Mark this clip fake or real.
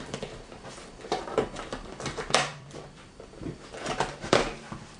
fake